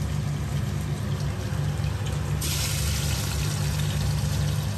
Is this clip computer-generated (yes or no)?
no